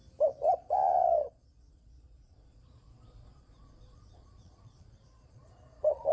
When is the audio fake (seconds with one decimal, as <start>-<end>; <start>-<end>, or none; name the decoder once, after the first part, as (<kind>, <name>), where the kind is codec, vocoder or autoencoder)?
0.5-6.1 (vocoder, Vocos)